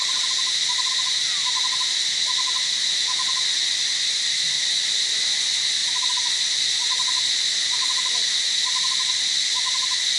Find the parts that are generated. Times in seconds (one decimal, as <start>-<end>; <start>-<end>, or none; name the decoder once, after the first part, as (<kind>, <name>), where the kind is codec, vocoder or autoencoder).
0.0-0.9 (vocoder, BigVGAN v2)